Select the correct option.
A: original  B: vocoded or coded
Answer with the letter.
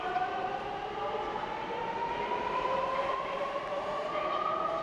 B